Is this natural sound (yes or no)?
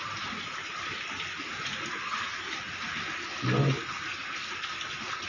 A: yes